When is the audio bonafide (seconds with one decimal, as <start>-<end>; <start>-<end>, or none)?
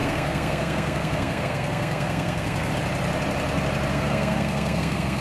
2.7-3.9